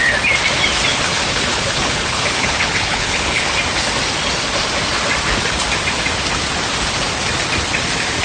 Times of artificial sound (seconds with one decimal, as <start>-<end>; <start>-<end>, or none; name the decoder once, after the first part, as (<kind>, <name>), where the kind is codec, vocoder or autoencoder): 0.9-3.5 (codec, HILCodec)